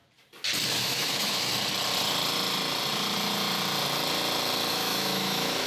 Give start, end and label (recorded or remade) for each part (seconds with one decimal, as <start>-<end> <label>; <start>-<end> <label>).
0.0-0.7 recorded; 0.7-1.5 remade; 1.5-4.7 recorded; 4.7-5.7 remade